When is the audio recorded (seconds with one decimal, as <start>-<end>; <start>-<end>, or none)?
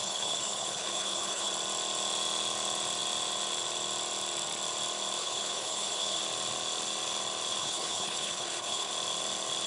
1.5-5.2; 6.2-7.6; 8.9-9.7